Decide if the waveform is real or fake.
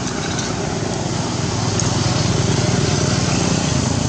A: real